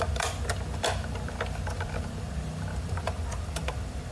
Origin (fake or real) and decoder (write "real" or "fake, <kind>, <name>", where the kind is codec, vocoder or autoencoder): fake, vocoder, BigVGAN v2